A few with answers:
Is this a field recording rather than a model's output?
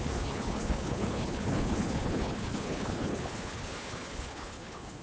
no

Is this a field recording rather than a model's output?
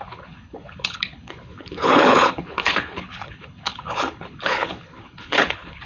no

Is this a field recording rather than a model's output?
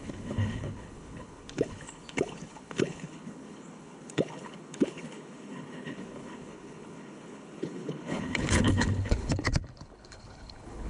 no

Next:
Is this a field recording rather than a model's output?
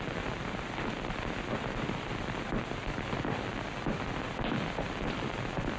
yes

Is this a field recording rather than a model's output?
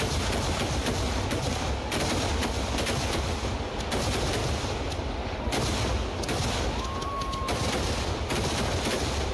yes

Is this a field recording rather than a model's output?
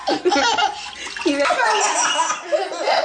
yes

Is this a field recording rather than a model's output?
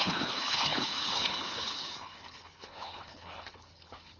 no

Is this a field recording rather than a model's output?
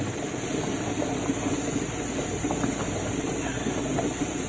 yes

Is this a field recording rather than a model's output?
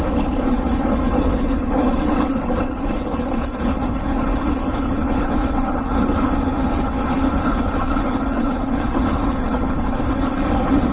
no